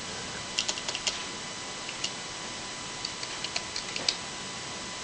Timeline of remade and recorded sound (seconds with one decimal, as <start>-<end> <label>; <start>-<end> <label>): 0.0-5.0 recorded